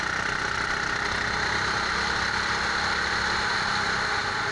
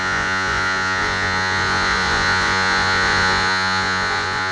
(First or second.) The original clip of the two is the first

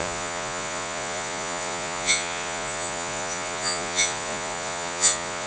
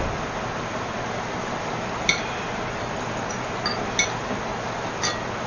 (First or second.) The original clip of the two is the second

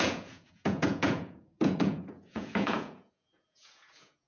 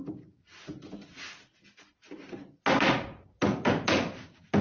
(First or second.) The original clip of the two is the second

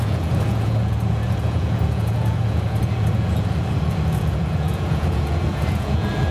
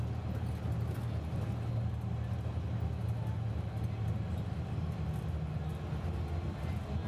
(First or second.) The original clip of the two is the second